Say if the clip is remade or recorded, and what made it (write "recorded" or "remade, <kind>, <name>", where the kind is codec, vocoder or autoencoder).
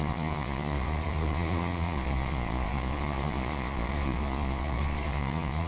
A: remade, vocoder, Vocos